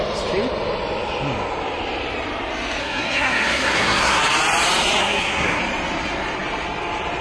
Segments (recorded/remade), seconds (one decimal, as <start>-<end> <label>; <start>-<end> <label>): 0.0-2.8 recorded; 2.8-4.2 remade; 4.2-5.0 recorded; 5.0-5.6 remade; 5.6-7.2 recorded